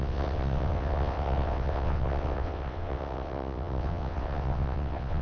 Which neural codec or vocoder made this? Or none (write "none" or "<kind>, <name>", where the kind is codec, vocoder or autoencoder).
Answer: vocoder, WaveNeXt